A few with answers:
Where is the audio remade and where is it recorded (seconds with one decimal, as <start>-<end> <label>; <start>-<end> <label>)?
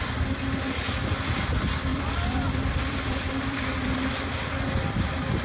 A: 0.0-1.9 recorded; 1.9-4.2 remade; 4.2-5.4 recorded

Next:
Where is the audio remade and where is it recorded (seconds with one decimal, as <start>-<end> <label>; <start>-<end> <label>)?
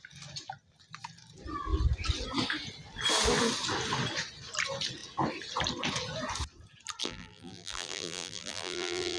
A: 0.0-7.0 recorded; 7.0-9.2 remade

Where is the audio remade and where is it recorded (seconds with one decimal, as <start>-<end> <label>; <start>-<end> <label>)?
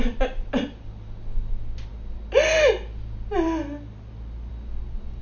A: 0.0-5.2 recorded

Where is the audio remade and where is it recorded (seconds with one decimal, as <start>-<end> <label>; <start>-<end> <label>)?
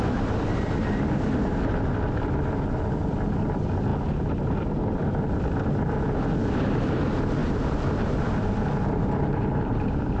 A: 0.0-7.4 recorded; 7.4-10.2 remade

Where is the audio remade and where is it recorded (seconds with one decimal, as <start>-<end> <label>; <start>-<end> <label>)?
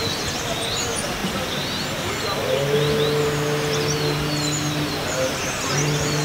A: 0.0-6.2 recorded